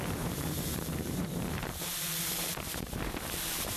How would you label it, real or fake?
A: fake